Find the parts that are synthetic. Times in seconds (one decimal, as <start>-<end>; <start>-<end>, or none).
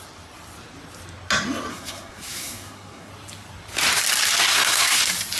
1.7-3.1; 4.5-5.0